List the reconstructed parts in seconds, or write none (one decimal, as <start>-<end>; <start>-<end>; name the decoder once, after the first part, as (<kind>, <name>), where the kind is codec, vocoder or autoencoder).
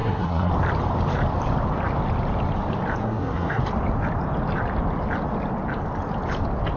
0.0-0.5 (codec, SNAC); 3.0-3.6